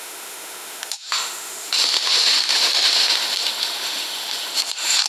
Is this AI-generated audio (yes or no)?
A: yes